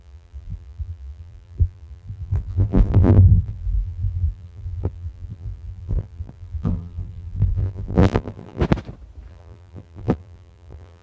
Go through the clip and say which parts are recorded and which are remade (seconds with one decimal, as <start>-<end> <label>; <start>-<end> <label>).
0.0-8.6 remade; 8.6-9.3 recorded; 9.3-11.0 remade